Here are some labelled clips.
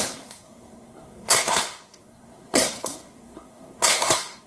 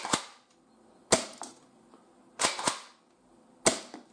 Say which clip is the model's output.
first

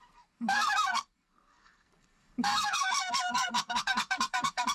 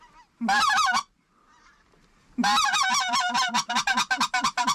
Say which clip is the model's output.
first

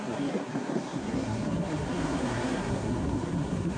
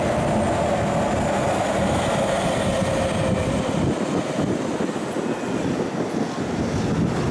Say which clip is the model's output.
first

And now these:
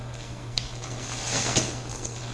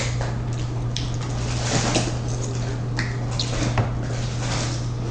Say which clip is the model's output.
first